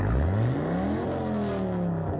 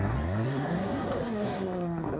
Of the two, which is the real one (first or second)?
first